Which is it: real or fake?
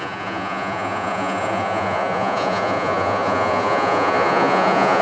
fake